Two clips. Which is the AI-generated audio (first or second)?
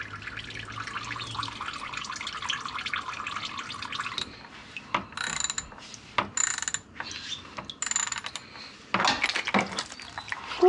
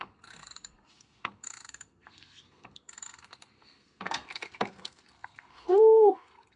second